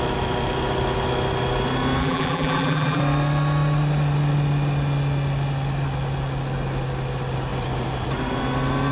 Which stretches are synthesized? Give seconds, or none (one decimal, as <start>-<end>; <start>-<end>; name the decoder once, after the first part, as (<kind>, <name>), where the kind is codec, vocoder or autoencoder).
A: 2.0-3.0 (vocoder, BigVGAN v2)